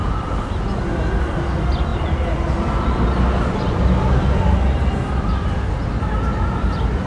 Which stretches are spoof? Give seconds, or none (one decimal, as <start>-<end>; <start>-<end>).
none